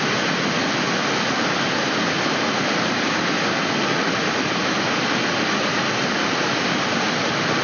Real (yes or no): yes